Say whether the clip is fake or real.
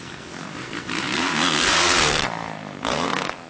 fake